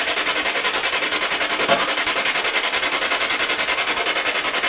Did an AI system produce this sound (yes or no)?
no